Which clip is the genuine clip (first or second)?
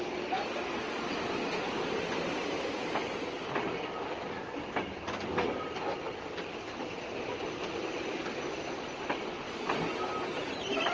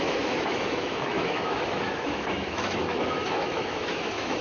first